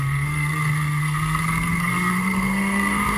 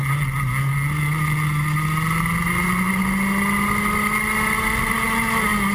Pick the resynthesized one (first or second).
first